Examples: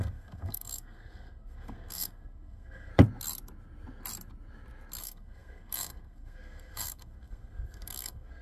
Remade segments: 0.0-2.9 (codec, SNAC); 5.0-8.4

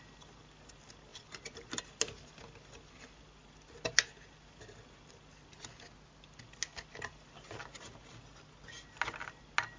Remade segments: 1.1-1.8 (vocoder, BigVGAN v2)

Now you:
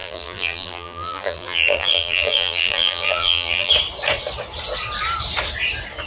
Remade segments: 0.0-3.7 (vocoder, BigVGAN v2)

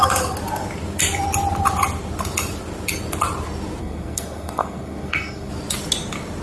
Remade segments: 3.8-5.5 (codec, SNAC)

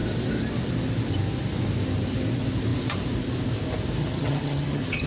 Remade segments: 4.0-5.1 (vocoder, HiFi-GAN)

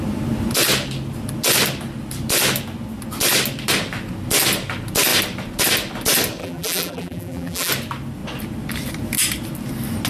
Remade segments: 6.4-7.7 (vocoder, BigVGAN v2)

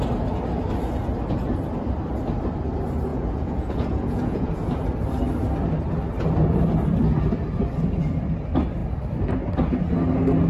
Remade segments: 3.1-4.5 (vocoder, Vocos)

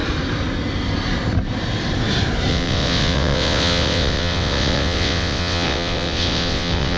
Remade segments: 2.5-7.0 (vocoder, WaveNeXt)